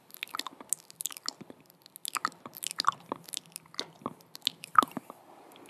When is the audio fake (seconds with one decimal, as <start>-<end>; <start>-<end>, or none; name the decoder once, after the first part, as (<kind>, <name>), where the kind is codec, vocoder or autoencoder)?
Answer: none